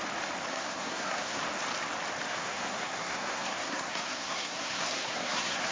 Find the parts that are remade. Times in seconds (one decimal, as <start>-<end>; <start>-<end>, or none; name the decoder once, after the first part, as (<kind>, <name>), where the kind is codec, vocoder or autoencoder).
0.5-1.4 (codec, SNAC); 2.3-5.7